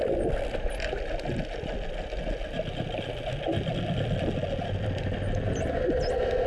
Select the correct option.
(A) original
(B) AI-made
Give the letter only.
A